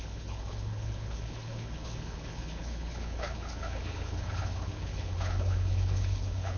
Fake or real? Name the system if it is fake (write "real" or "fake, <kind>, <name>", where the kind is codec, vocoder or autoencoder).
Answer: fake, codec, HILCodec